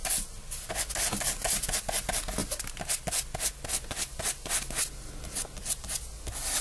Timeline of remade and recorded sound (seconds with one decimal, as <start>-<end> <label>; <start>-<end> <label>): 0.0-6.6 recorded